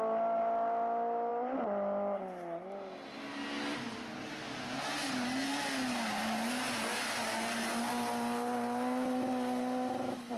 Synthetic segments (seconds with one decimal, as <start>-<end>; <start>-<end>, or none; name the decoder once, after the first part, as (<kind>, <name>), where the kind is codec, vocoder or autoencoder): none